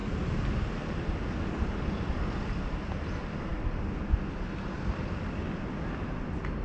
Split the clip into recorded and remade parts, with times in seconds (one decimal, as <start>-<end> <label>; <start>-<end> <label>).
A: 0.0-6.6 recorded